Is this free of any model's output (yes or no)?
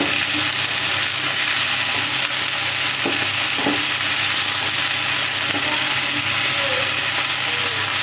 yes